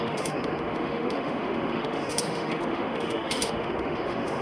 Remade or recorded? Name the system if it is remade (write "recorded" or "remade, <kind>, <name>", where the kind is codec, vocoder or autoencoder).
remade, autoencoder, DAC-VAE